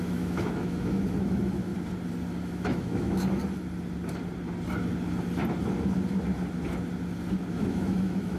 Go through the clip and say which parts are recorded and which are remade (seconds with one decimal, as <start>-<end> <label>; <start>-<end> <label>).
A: 0.0-1.7 remade; 1.7-2.5 recorded; 2.5-3.4 remade; 3.4-7.5 recorded; 7.5-8.4 remade